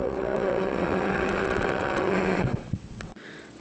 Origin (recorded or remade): remade